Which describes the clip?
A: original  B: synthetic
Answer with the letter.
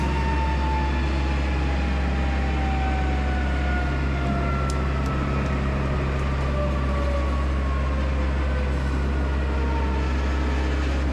A